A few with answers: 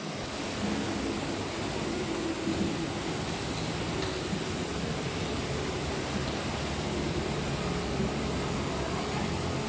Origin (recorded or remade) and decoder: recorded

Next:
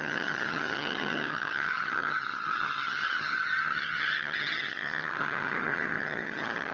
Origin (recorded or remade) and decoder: remade, vocoder, HiFi-GAN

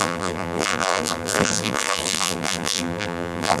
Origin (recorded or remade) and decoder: remade, vocoder, BigVGAN v2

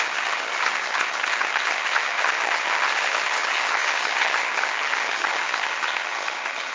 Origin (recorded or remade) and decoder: remade, vocoder, HiFi-GAN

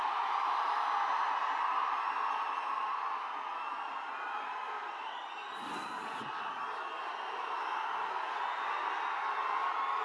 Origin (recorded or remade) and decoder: recorded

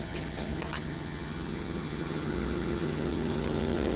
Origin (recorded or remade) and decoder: remade, vocoder, HiFi-GAN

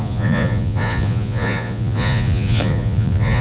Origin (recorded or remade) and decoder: remade, vocoder, Vocos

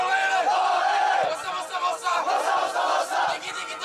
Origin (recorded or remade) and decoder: remade, vocoder, BigVGAN v2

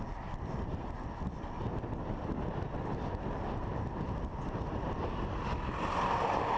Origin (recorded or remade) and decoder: recorded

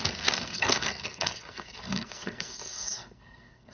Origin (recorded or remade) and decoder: remade, codec, SNAC